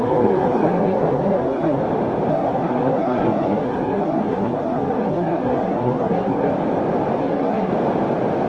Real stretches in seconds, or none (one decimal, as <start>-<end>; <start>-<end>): 1.8-2.3; 6.5-7.2; 7.7-8.5